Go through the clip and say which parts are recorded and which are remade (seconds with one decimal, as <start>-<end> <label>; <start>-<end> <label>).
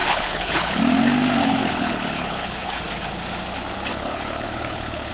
0.0-0.8 remade; 0.8-1.4 recorded; 1.4-2.8 remade; 2.8-3.9 recorded; 3.9-5.1 remade